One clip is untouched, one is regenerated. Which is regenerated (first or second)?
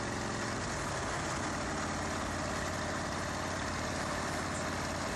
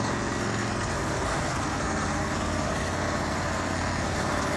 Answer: second